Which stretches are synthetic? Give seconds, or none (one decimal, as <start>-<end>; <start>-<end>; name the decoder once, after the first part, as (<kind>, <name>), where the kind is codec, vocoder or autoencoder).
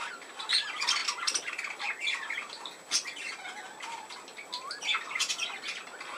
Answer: none